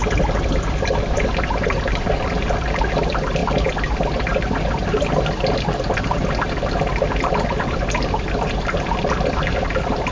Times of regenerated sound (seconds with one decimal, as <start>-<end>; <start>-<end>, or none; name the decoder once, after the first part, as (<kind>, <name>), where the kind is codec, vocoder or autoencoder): none